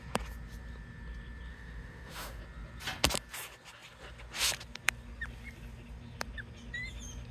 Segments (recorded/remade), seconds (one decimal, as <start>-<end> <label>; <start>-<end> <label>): 0.0-1.5 recorded; 1.5-2.4 remade; 2.4-7.3 recorded